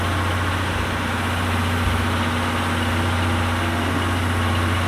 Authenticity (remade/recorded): recorded